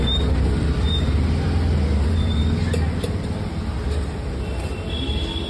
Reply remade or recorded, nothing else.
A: recorded